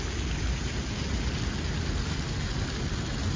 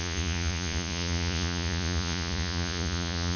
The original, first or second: first